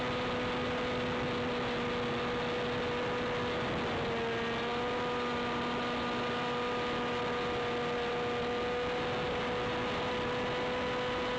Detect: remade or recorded recorded